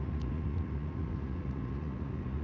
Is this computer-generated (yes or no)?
yes